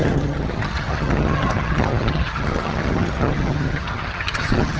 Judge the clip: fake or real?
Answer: fake